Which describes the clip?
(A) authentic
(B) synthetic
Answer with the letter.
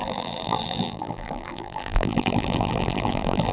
B